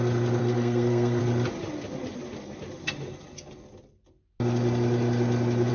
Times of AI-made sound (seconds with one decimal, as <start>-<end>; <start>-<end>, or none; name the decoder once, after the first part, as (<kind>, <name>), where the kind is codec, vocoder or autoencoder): 0.4-1.2 (codec, SNAC)